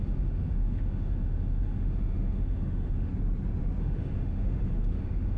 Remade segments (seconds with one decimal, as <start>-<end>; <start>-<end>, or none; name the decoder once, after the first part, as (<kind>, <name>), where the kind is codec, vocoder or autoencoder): 0.0-3.1 (autoencoder, DAC-VAE); 3.8-5.4